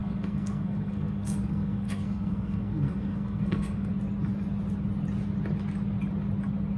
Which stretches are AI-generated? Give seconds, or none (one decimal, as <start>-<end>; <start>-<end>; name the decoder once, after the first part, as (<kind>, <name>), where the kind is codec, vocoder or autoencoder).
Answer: 0.0-3.9 (codec, SNAC)